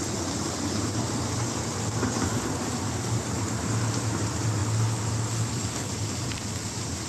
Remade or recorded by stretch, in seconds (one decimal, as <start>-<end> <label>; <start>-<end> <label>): 0.0-4.6 remade; 4.6-5.5 recorded; 5.5-7.1 remade

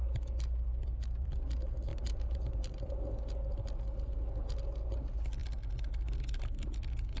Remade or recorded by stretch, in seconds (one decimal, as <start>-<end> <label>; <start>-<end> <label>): 0.0-1.9 recorded; 1.9-2.9 remade; 2.9-7.2 recorded

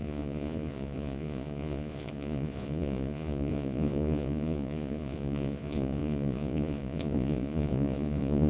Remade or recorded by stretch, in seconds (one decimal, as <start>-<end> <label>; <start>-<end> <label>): 0.0-8.5 remade

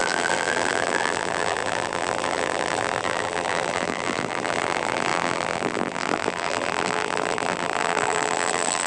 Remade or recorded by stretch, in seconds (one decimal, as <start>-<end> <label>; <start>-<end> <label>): 0.0-8.9 remade

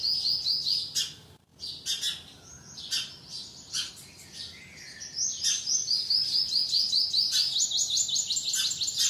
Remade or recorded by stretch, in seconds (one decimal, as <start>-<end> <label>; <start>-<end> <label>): 0.0-9.1 recorded

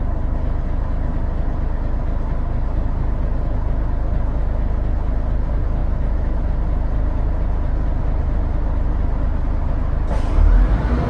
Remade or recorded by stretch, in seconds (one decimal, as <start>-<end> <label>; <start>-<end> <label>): 0.0-11.1 recorded